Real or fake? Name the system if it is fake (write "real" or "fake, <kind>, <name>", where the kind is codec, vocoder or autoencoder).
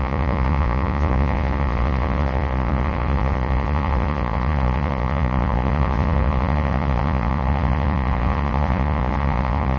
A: fake, vocoder, Vocos